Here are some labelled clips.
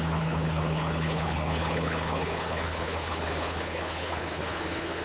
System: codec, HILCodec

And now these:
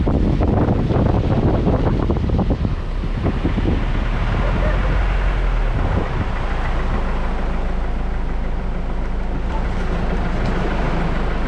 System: none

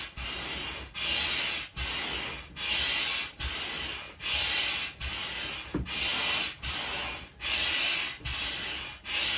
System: none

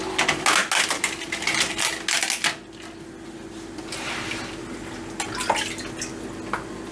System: none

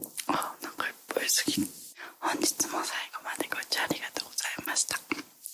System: none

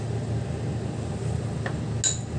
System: none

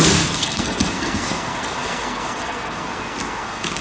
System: codec, SNAC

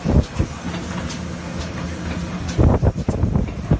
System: none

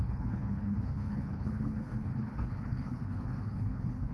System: codec, HILCodec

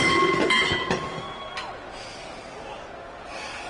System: none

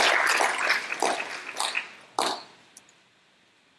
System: none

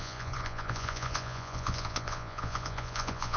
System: vocoder, Vocos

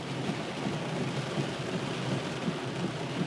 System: none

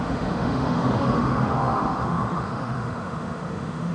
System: autoencoder, DAC-VAE